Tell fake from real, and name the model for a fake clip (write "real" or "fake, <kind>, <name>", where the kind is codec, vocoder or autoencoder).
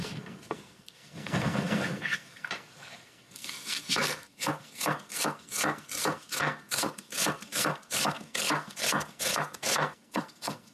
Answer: fake, codec, SNAC